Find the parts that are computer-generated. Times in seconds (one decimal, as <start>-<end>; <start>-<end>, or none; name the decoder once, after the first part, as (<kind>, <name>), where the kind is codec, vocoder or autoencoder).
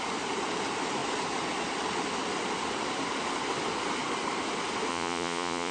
4.9-5.7 (vocoder, Vocos)